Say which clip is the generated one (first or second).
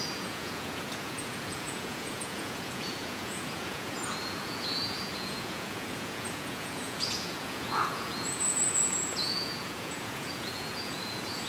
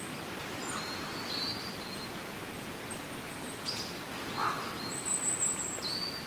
first